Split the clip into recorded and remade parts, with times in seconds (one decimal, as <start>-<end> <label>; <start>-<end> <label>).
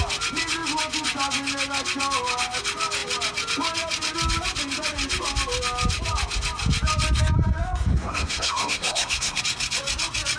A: 0.0-7.9 recorded; 7.9-9.4 remade; 9.4-10.4 recorded